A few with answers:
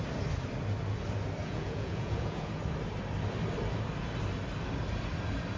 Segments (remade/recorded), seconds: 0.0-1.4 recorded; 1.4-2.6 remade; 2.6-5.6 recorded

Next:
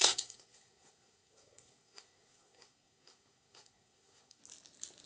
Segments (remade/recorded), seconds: 0.0-4.4 remade; 4.4-5.1 recorded